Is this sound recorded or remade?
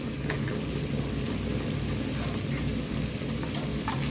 recorded